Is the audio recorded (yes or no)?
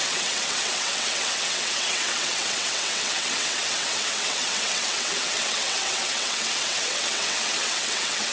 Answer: no